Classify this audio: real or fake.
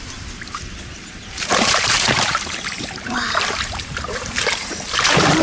fake